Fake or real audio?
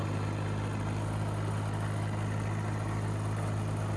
real